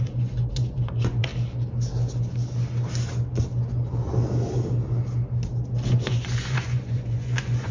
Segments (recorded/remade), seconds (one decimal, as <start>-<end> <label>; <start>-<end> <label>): 0.0-1.3 remade; 1.3-5.9 recorded; 5.9-7.7 remade